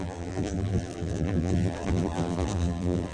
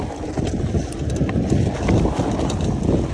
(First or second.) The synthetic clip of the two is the first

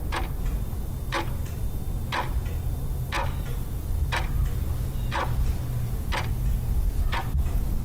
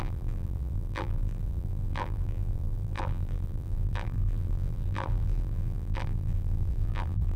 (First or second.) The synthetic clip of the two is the second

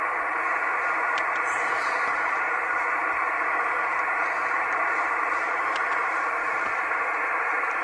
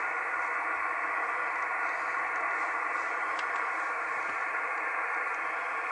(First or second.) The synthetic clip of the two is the first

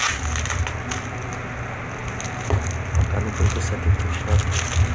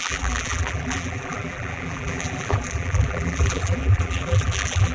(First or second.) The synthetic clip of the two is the second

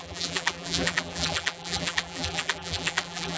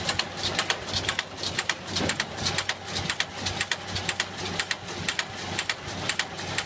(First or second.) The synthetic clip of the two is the first